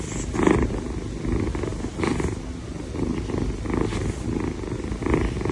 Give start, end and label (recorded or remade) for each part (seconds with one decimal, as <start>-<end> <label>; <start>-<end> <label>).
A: 0.0-5.5 recorded